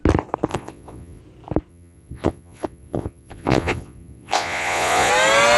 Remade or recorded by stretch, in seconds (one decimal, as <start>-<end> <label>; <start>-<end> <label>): 0.0-0.5 recorded; 0.5-1.2 remade; 1.2-1.7 recorded; 1.7-5.1 remade; 5.1-5.6 recorded